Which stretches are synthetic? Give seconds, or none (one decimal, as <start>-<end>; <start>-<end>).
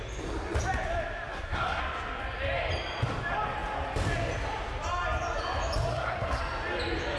1.3-1.8; 5.9-6.4